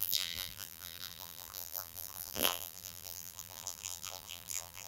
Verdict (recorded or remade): remade